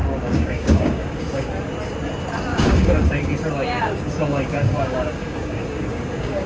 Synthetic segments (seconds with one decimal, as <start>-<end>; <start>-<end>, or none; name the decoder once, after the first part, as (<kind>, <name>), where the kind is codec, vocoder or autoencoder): 0.0-1.5 (codec, DAC); 2.5-6.5